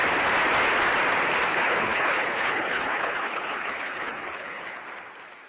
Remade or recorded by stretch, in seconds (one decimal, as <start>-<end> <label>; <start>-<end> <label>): 0.0-1.5 recorded; 1.5-4.8 remade; 4.8-5.5 recorded